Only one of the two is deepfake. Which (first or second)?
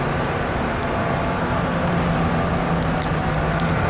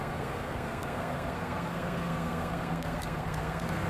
second